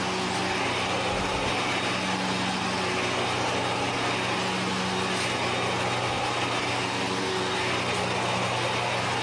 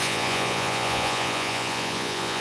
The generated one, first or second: second